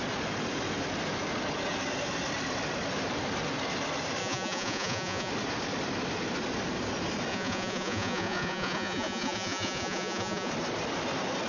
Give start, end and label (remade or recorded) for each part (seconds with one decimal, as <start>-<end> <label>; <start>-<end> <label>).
0.0-4.2 recorded; 4.2-5.3 remade; 5.3-7.3 recorded; 7.3-10.5 remade; 10.5-11.5 recorded